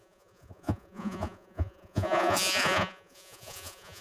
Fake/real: fake